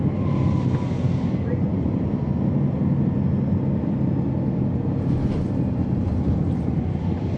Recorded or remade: recorded